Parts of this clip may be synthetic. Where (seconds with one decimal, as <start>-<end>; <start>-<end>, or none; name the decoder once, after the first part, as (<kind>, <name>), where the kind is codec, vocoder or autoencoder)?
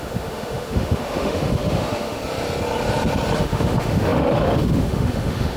0.0-2.2 (autoencoder, DAC-VAE); 3.4-5.6